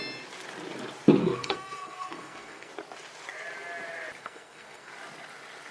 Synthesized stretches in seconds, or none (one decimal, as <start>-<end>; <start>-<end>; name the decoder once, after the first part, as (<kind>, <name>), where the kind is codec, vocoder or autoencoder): 1.2-2.7 (codec, SNAC); 4.2-4.9